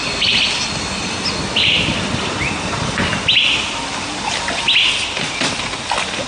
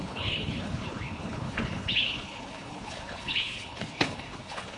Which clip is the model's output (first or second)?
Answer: second